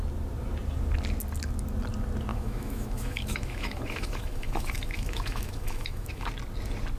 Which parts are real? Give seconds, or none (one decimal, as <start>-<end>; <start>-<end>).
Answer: 0.0-2.3; 6.3-7.0